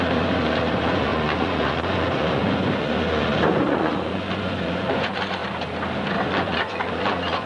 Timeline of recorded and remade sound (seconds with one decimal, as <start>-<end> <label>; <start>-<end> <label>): 0.0-5.4 remade; 5.4-6.3 recorded; 6.3-7.5 remade